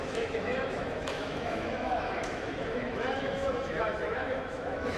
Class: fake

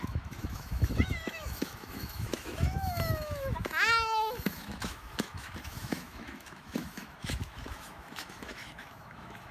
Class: fake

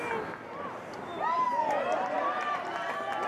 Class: real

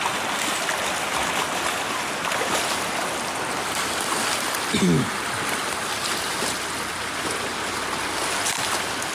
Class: real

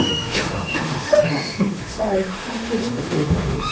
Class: fake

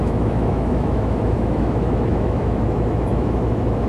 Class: fake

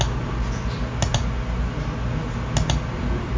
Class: real